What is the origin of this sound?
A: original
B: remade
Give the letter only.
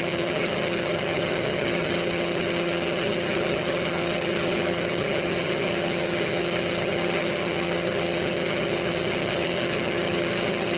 B